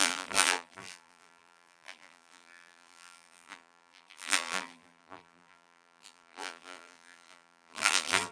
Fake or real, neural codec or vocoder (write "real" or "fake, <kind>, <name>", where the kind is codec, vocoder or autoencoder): fake, vocoder, BigVGAN v2